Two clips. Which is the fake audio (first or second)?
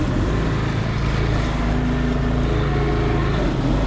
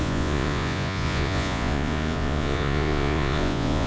second